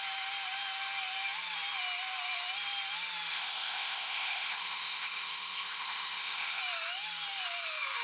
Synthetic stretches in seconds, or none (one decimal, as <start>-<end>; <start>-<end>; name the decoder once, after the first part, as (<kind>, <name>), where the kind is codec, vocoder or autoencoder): 3.3-6.6 (codec, ZipCodec)